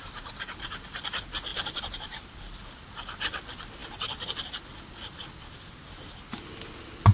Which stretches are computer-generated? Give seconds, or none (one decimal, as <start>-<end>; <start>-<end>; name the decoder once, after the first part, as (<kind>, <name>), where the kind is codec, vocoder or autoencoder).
none